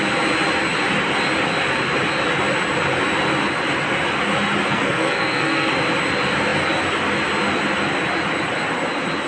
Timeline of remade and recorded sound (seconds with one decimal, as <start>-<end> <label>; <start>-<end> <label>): 0.0-4.7 recorded; 4.7-5.7 remade; 5.7-9.3 recorded